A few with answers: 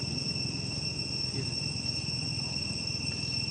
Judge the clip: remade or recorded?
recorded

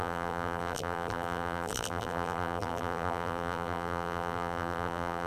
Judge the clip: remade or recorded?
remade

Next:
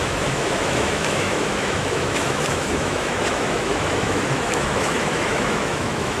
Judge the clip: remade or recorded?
remade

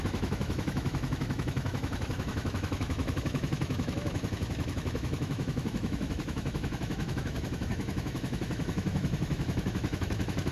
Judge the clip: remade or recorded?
remade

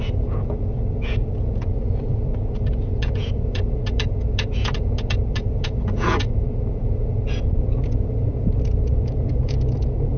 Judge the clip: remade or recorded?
remade